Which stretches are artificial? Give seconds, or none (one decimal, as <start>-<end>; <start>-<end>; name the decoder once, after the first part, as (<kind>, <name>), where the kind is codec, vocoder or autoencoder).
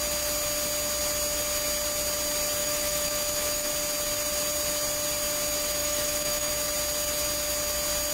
2.6-3.7 (autoencoder, DAC-VAE); 5.8-6.5